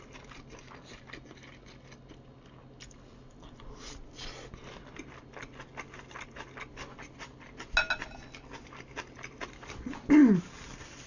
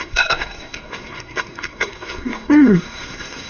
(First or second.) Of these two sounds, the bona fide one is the first